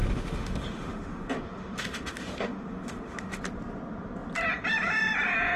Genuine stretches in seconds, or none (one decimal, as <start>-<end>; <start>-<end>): 3.4-5.6

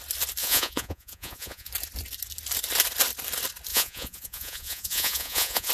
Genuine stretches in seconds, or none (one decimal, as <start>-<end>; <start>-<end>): 0.0-0.4; 1.7-3.7

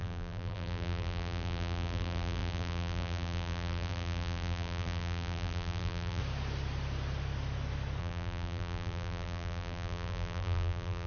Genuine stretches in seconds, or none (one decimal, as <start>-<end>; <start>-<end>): 6.2-8.0

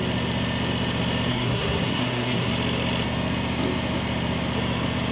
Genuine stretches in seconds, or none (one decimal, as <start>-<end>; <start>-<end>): 0.0-1.3; 2.5-5.1

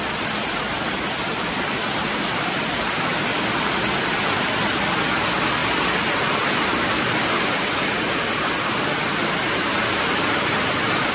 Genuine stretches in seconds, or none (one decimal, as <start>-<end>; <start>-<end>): 0.0-11.1